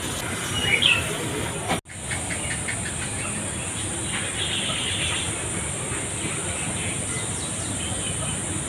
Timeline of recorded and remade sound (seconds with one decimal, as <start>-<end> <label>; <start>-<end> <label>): 0.0-8.7 recorded